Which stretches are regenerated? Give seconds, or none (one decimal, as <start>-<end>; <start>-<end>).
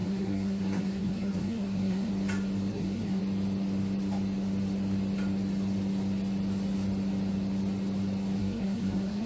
0.0-2.1; 2.7-3.2; 8.4-9.3